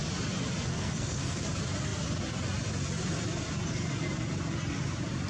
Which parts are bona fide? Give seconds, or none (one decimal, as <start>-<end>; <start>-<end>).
0.0-0.7; 1.4-5.3